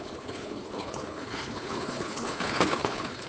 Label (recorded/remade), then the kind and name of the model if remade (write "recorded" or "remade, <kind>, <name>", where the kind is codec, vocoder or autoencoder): remade, codec, HILCodec